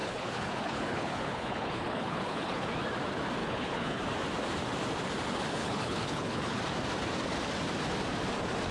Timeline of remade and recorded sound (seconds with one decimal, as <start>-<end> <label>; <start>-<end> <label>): 0.0-2.7 remade; 2.7-3.4 recorded; 3.4-4.0 remade; 4.0-5.6 recorded; 5.6-6.6 remade; 6.6-8.7 recorded